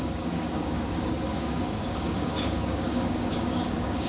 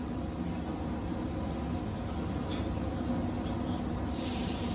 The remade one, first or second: first